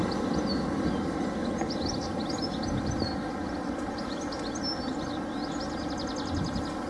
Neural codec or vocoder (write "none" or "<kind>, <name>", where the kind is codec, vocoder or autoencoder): none